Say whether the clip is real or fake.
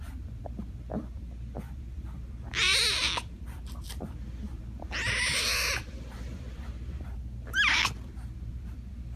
fake